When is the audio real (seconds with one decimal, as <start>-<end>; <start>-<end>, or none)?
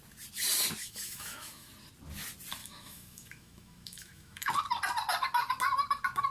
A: 0.0-0.8; 1.7-2.6; 4.5-6.3